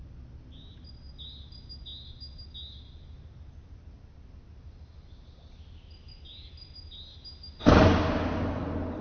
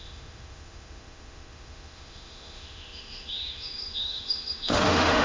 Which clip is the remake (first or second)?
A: second